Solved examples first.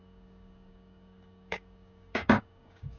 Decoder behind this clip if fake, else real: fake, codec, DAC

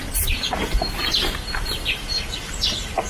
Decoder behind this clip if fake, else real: real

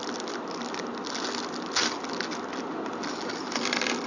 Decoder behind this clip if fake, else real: real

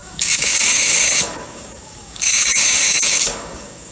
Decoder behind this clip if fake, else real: fake, codec, DAC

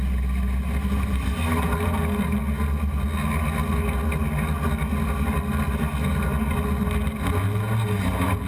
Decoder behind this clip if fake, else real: real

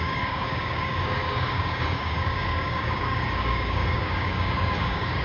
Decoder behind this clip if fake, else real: fake, codec, DAC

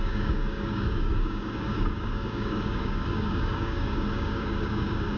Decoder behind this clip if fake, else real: fake, codec, DAC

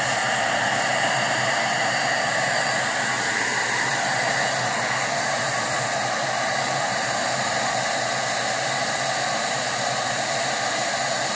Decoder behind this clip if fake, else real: real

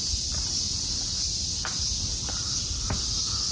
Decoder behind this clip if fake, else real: real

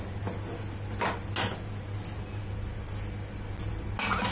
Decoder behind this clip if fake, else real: real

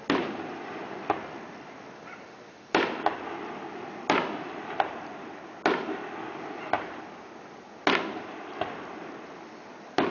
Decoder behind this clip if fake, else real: real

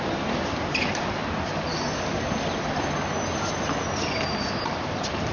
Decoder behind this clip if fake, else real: real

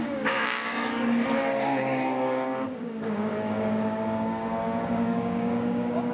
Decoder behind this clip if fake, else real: fake, codec, DAC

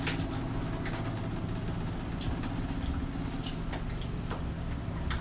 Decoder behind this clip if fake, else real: real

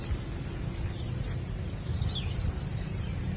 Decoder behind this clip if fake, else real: real